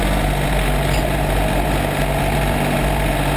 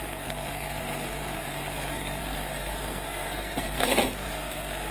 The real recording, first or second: first